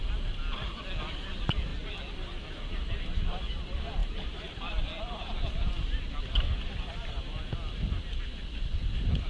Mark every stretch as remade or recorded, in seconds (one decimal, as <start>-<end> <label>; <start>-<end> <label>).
0.0-9.3 recorded